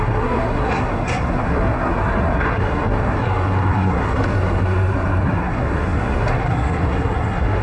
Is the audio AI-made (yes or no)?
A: yes